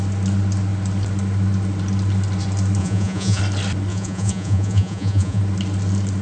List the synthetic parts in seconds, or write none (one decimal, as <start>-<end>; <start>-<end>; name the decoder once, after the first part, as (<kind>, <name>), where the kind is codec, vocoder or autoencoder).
2.8-3.4 (vocoder, Vocos); 3.9-5.4